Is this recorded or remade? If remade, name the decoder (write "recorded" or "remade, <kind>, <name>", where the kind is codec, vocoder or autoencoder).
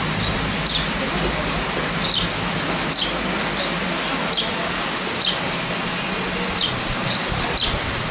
recorded